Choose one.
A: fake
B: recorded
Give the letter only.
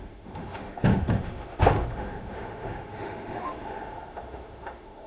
A